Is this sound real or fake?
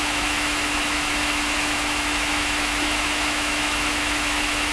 fake